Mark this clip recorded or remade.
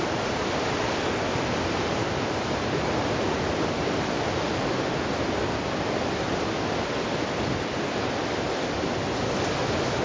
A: recorded